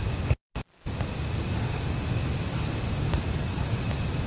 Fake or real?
real